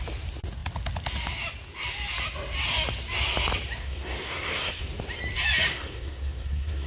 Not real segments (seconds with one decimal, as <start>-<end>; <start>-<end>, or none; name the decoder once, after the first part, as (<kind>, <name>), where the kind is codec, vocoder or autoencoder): 3.8-4.8 (codec, SNAC); 5.7-6.9

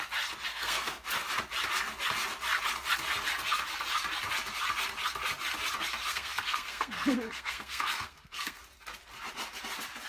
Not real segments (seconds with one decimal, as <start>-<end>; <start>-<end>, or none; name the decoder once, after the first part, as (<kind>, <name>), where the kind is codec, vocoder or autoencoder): 0.5-1.0 (codec, SNAC); 6.1-8.6

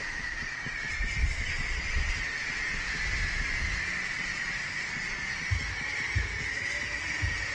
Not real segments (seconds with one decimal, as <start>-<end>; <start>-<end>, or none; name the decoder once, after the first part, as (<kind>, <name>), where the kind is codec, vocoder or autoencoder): 1.2-2.1 (vocoder, Vocos)

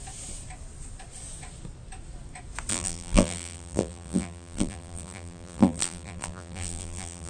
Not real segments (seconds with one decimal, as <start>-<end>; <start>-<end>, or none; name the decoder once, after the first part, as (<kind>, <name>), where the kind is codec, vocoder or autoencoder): 2.7-7.3 (vocoder, BigVGAN v2)

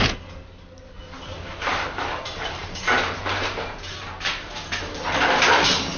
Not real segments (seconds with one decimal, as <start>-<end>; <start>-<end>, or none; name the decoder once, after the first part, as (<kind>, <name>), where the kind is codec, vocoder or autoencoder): 1.3-4.1 (vocoder, BigVGAN v2)

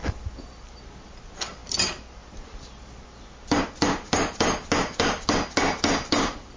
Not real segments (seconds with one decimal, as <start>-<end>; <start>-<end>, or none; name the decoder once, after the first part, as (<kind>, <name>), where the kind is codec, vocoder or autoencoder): none